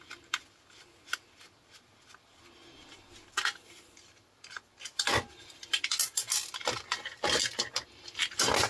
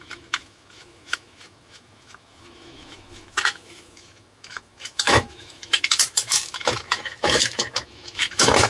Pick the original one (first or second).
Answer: first